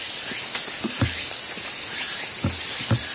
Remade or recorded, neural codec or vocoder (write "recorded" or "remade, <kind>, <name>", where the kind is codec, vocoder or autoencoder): recorded